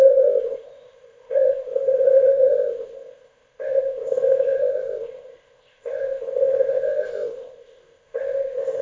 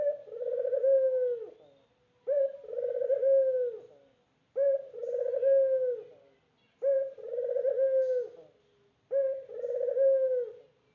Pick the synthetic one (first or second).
first